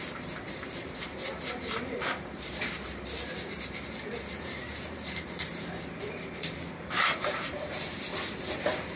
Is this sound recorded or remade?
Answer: remade